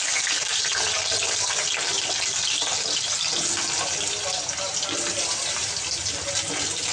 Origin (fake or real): real